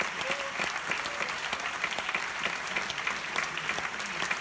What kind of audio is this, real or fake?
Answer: real